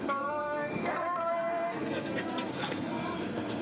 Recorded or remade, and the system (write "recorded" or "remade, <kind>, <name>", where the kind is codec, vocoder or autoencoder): remade, codec, SNAC